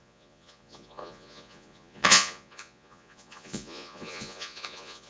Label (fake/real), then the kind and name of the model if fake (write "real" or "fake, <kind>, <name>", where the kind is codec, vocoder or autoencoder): fake, vocoder, Vocos